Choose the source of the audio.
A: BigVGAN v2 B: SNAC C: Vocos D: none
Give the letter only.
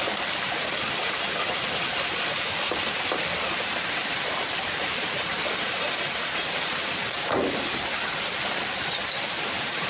A